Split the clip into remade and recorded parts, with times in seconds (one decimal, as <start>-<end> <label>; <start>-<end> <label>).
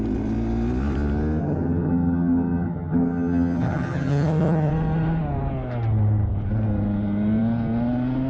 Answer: 0.0-1.4 recorded; 1.4-4.7 remade; 4.7-8.3 recorded